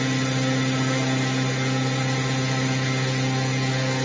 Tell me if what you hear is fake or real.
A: real